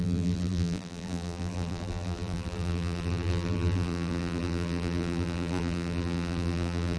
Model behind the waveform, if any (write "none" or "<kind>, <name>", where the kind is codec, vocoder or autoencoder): vocoder, BigVGAN v2